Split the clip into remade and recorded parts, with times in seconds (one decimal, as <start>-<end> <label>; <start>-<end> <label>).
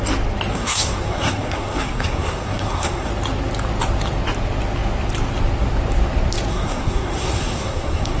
0.0-0.5 recorded; 0.5-3.1 remade; 3.1-6.5 recorded; 6.5-8.2 remade